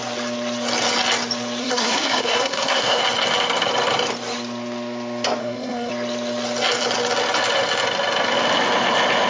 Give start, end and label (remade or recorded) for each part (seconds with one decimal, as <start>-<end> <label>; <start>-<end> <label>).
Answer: 0.0-1.6 recorded; 1.6-3.0 remade; 3.0-5.4 recorded; 5.4-5.9 remade; 5.9-9.3 recorded